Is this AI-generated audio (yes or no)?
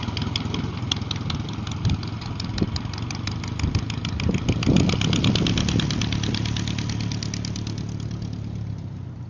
no